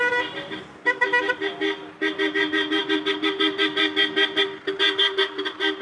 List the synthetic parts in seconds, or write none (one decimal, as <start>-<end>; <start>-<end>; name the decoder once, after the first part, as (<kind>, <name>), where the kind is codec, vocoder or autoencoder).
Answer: none